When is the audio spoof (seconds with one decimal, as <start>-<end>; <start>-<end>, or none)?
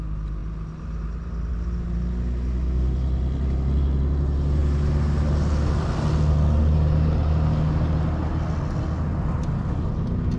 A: none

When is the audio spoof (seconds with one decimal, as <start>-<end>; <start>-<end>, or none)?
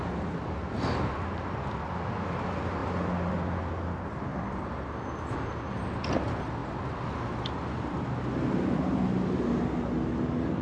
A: none